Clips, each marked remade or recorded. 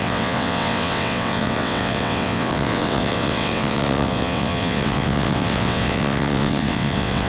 remade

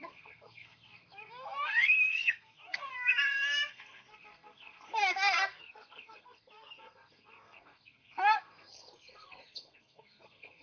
remade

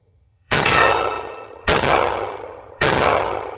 remade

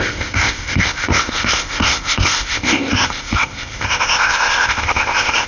remade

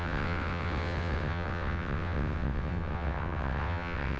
remade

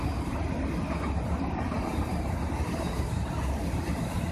recorded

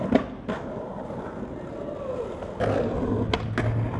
recorded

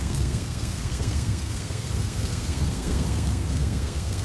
remade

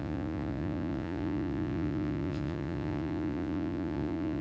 remade